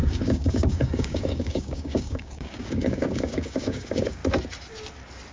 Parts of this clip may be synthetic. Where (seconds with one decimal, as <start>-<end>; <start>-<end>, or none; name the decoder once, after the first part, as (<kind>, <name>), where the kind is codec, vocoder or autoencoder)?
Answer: 0.0-4.2 (codec, DAC)